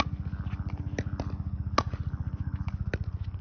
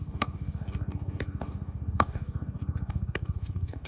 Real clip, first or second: first